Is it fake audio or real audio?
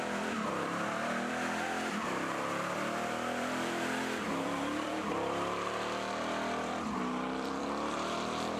fake